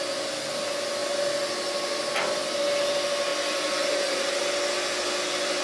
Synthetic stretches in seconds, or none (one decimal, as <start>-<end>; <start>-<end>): none